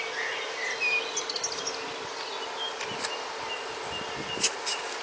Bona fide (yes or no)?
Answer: yes